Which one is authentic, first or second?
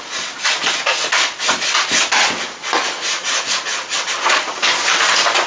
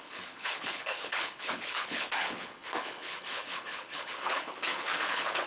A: first